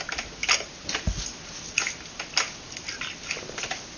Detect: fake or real real